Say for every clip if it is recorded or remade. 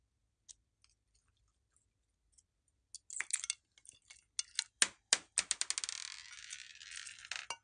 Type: recorded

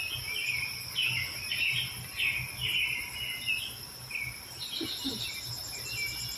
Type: recorded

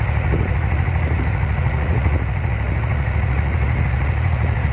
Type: remade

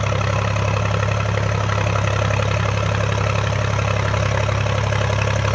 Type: recorded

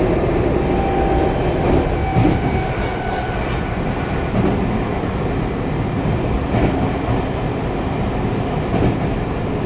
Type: recorded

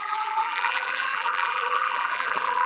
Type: remade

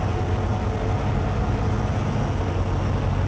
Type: recorded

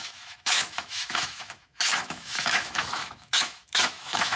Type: remade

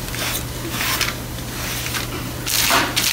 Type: recorded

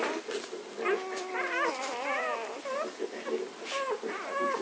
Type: recorded